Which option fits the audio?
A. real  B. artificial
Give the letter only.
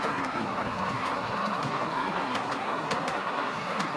B